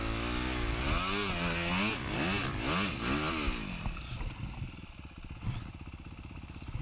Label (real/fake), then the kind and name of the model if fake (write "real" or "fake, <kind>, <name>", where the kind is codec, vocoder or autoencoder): real